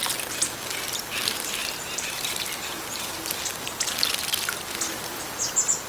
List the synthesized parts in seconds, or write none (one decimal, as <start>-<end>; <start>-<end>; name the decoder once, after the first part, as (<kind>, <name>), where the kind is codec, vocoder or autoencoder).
1.6-2.8 (vocoder, BigVGAN v2)